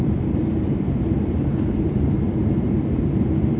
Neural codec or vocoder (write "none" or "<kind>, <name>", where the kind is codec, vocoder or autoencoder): vocoder, BigVGAN v2